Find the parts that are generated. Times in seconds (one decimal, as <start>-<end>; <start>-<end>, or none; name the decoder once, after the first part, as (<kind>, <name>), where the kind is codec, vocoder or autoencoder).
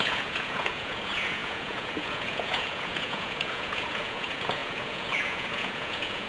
0.0-6.3 (vocoder, Vocos)